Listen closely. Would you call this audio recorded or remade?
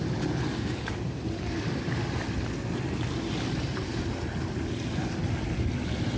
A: recorded